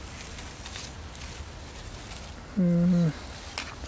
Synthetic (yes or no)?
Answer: no